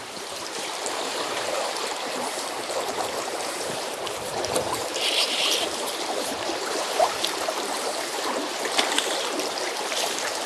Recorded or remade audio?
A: remade